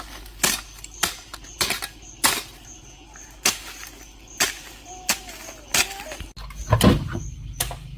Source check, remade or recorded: recorded